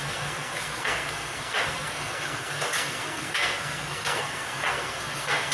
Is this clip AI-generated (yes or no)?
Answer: yes